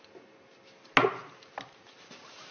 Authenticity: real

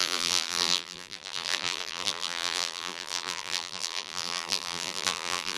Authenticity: fake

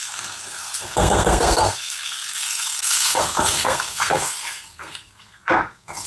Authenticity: fake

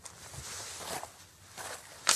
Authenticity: real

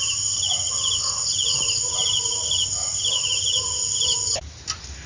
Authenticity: real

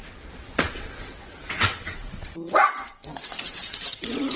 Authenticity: fake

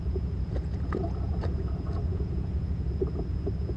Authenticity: fake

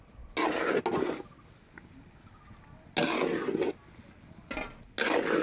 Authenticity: real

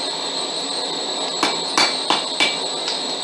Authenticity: real